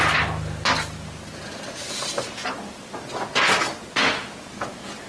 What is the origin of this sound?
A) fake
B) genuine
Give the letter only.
B